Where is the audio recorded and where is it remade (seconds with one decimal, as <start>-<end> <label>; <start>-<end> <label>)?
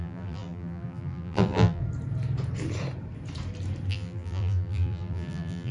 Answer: 0.0-1.8 remade; 1.8-3.9 recorded; 3.9-5.7 remade